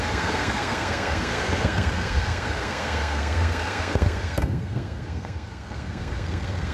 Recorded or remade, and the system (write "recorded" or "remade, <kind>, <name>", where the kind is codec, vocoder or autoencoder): remade, codec, SNAC